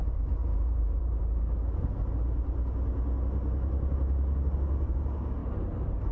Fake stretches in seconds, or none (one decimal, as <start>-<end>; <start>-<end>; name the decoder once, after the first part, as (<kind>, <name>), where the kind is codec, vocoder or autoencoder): 0.4-1.2 (vocoder, BigVGAN v2); 5.4-6.1